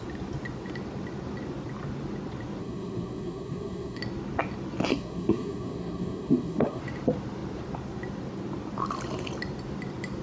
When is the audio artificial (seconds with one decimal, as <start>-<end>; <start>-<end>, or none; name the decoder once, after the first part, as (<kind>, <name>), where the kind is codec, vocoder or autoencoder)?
2.6-4.0 (codec, SNAC); 4.9-6.8